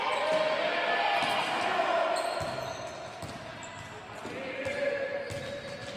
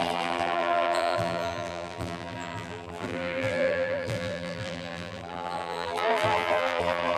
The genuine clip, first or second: first